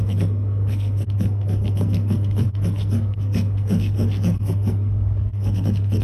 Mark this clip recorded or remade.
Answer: remade